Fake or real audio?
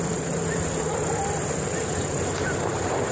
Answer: real